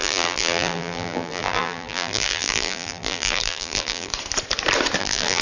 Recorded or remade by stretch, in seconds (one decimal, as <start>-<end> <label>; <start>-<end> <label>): 0.0-4.1 remade; 4.1-5.0 recorded; 5.0-5.4 remade